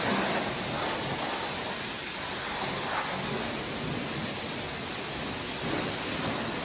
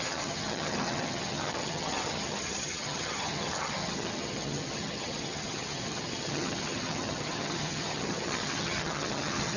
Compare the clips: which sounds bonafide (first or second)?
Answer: first